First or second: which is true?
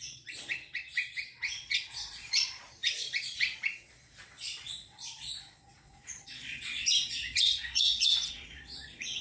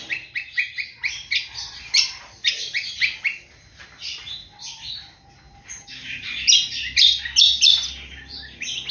second